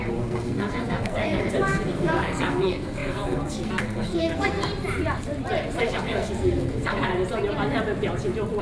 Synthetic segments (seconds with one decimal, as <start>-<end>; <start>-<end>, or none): 0.0-4.7; 5.8-7.1